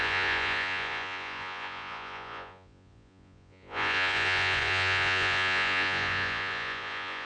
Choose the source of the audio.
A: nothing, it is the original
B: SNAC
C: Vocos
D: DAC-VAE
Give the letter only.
C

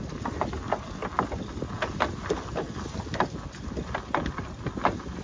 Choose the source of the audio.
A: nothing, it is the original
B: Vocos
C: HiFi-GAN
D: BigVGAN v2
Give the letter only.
A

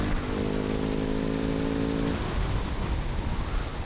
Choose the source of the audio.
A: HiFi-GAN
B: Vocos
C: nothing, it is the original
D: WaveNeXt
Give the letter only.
C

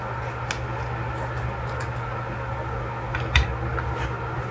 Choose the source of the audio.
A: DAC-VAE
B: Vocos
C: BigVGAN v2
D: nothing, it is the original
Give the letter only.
D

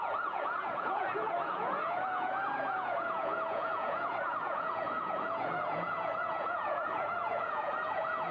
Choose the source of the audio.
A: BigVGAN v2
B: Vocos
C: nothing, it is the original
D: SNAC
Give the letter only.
B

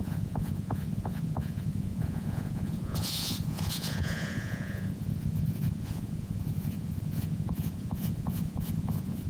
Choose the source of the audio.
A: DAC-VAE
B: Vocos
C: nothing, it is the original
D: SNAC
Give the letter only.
B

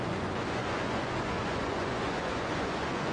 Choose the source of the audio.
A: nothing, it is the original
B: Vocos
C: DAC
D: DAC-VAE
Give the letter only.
B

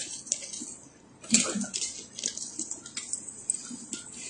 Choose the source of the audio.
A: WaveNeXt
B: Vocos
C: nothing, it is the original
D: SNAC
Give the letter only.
C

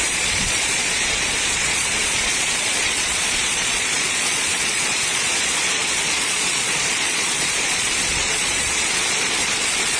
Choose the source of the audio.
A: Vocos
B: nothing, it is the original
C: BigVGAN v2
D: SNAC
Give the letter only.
A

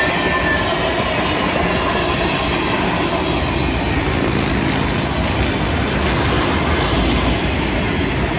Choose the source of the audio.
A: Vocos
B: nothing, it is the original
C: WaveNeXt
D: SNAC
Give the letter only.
B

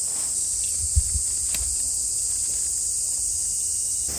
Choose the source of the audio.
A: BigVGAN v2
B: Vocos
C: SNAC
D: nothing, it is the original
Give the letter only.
D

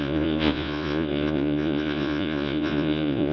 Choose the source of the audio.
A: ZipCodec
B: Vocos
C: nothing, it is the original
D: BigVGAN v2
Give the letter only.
B